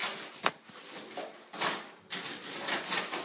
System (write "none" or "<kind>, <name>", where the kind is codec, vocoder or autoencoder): none